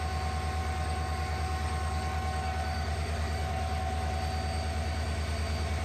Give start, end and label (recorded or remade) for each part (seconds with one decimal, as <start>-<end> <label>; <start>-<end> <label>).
0.0-0.6 recorded; 0.6-4.1 remade; 4.1-5.8 recorded